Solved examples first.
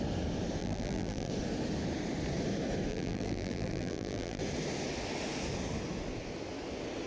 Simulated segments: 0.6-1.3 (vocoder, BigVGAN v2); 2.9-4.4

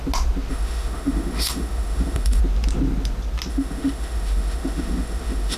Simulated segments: 0.5-2.4 (autoencoder, DAC-VAE); 3.5-5.6

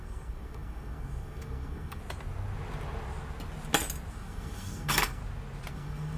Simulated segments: 0.0-2.0 (codec, SNAC); 4.1-5.2; 5.7-6.2